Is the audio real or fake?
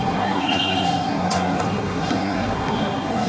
fake